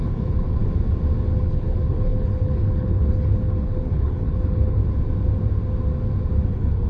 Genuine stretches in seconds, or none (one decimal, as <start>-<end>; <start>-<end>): 0.6-1.4; 4.8-6.5